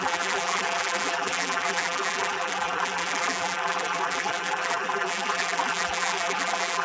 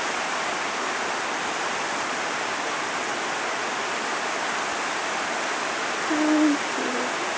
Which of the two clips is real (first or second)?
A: second